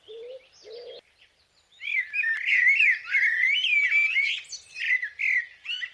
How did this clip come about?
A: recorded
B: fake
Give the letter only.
A